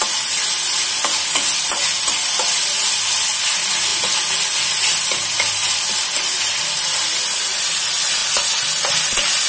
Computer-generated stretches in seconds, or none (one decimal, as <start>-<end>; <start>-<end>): none